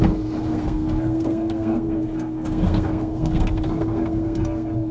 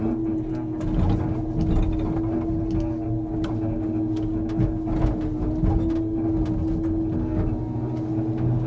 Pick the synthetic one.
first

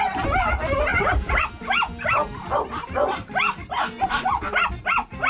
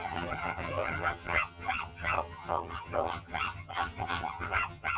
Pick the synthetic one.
second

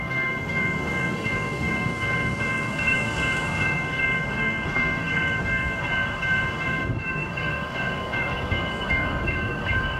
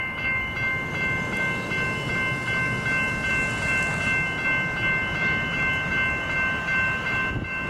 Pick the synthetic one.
first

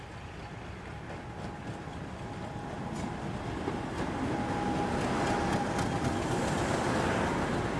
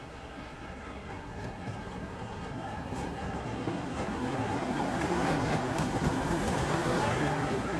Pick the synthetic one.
second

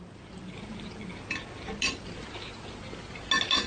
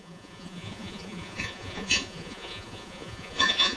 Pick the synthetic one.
second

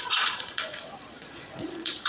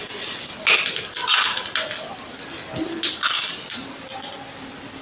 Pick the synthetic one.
first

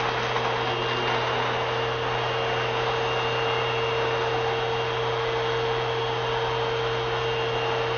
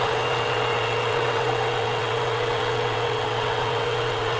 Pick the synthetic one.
second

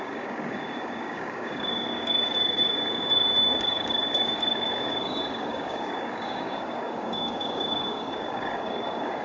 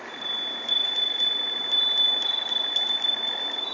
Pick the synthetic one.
first